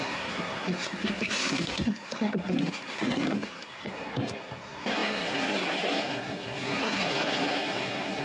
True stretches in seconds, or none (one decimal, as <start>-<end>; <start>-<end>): none